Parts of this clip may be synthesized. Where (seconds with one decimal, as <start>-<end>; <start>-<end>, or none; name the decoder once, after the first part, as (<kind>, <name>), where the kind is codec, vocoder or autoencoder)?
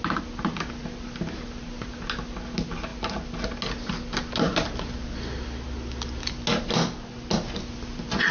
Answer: none